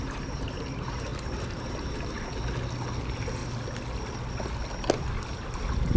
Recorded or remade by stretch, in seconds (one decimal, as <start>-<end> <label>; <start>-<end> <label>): 0.0-2.3 remade; 2.3-3.0 recorded; 3.0-3.4 remade; 3.4-4.9 recorded; 4.9-6.0 remade